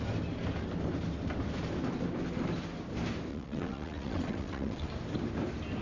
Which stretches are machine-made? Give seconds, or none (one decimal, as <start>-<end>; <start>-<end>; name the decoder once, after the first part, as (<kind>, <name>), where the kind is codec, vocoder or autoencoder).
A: 3.3-4.9 (vocoder, WaveNeXt)